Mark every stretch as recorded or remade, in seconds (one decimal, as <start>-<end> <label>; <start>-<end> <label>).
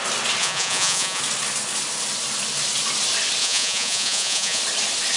0.0-0.4 recorded; 0.4-1.2 remade; 1.2-3.4 recorded; 3.4-4.6 remade; 4.6-5.2 recorded